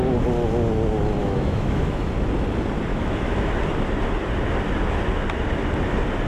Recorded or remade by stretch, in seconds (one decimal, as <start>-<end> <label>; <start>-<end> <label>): 0.0-1.2 recorded; 1.2-2.1 remade; 2.1-2.9 recorded; 2.9-3.6 remade; 3.6-6.3 recorded

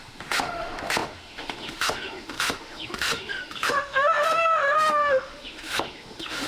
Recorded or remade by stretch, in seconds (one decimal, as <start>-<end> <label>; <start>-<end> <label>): 0.0-6.5 remade

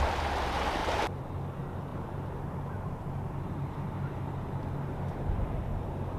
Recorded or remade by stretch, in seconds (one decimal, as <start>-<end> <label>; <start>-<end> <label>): 0.0-0.8 recorded; 0.8-1.4 remade; 1.4-1.9 recorded; 1.9-5.6 remade; 5.6-6.2 recorded

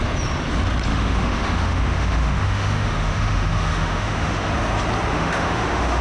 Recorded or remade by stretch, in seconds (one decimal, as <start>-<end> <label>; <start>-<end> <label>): 0.0-0.9 recorded; 0.9-4.5 remade; 4.5-5.1 recorded; 5.1-6.0 remade

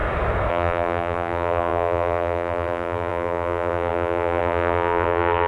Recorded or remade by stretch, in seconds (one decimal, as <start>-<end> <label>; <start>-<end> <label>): 0.0-0.5 recorded; 0.5-5.5 remade

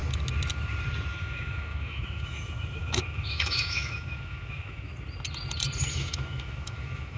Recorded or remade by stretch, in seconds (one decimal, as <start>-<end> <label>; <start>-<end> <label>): 0.0-1.1 recorded; 1.1-4.9 remade; 4.9-5.9 recorded; 5.9-7.2 remade

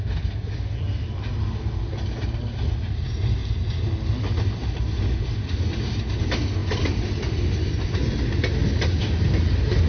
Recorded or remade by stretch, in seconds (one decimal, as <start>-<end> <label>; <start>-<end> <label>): 0.0-9.9 recorded